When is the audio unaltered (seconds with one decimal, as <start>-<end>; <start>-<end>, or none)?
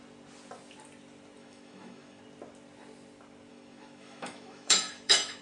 0.0-1.4; 2.2-3.5